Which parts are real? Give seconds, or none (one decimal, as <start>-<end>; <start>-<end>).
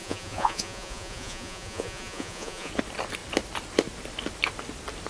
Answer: 2.7-5.1